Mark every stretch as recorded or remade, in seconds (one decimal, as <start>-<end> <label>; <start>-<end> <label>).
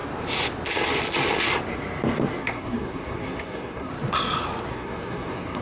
0.0-2.4 recorded; 2.4-3.9 remade; 3.9-4.7 recorded; 4.7-5.6 remade